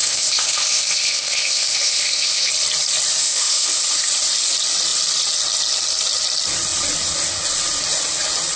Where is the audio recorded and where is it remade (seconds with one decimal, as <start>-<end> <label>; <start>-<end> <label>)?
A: 0.0-2.5 remade; 2.5-3.2 recorded; 3.2-3.8 remade; 3.8-8.6 recorded

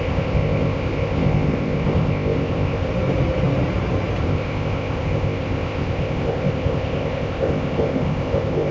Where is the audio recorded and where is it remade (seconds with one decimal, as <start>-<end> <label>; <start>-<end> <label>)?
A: 0.0-2.9 remade; 2.9-4.2 recorded; 4.2-8.7 remade

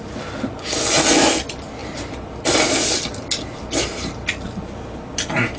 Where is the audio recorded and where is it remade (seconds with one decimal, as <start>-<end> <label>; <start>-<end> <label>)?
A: 0.0-5.6 recorded

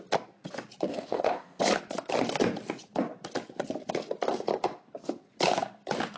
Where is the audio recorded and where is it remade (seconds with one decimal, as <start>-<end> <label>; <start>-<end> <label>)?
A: 0.0-0.9 recorded; 0.9-1.6 remade; 1.6-6.2 recorded

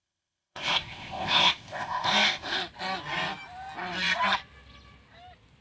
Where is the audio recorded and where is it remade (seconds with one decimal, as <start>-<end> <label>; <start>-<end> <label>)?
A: 0.0-2.6 remade; 2.6-5.6 recorded

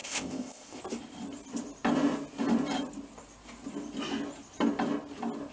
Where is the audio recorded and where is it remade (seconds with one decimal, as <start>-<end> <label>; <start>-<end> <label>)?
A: 0.0-0.8 remade; 0.8-5.5 recorded